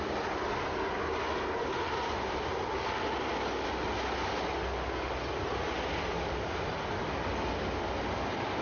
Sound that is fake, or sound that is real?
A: real